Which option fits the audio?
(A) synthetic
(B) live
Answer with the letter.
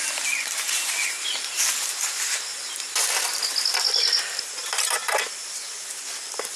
B